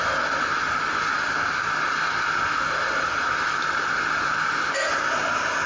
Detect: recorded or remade recorded